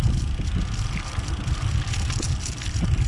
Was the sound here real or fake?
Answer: real